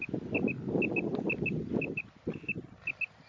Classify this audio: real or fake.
real